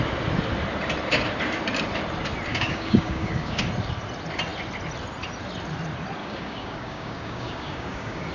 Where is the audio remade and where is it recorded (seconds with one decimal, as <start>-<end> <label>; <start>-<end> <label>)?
0.0-2.5 recorded; 2.5-3.6 remade; 3.6-6.2 recorded; 6.2-8.3 remade

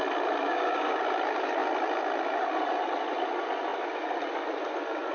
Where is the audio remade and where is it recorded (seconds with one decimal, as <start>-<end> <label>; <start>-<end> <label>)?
0.0-0.4 recorded; 0.4-1.0 remade; 1.0-5.1 recorded